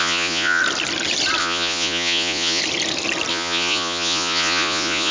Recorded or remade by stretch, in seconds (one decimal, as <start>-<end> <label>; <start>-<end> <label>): 0.0-0.6 remade; 0.6-1.4 recorded; 1.4-2.6 remade; 2.6-3.3 recorded; 3.3-5.1 remade

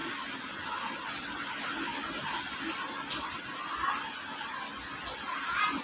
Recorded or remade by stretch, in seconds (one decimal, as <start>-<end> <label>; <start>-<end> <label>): 0.0-5.8 recorded

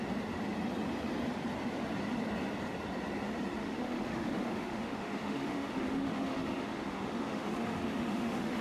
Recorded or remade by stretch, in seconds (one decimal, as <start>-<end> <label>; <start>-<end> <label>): 0.0-3.6 recorded; 3.6-8.6 remade

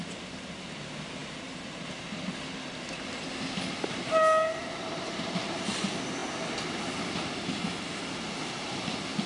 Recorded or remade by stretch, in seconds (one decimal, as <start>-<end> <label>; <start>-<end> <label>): 0.0-4.6 recorded; 4.6-5.6 remade; 5.6-9.3 recorded